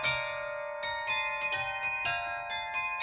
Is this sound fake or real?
real